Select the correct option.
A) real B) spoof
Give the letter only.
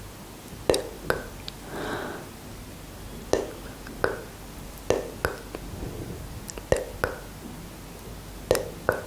A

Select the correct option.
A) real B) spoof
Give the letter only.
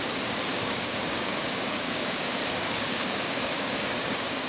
B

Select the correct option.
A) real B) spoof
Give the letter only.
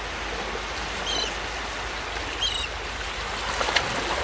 A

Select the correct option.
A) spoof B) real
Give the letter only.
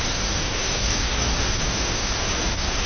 A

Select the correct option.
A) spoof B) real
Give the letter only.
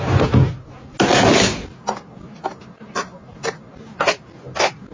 B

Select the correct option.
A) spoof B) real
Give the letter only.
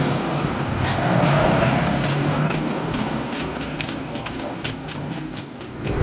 A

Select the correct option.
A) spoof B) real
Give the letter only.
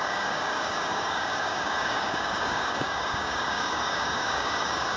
A